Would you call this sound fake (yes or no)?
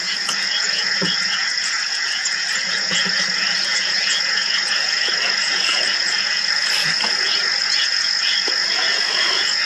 yes